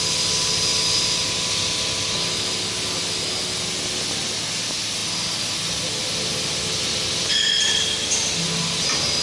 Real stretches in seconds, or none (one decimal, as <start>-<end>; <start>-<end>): 0.0-9.2